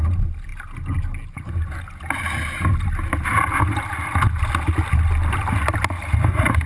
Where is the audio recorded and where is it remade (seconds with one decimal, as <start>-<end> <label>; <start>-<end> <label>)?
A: 0.0-6.7 recorded